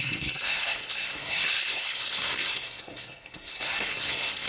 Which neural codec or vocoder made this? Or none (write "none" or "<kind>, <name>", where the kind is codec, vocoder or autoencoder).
codec, SNAC